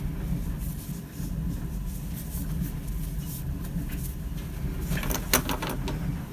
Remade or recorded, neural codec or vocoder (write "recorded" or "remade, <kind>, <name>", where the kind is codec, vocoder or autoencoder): recorded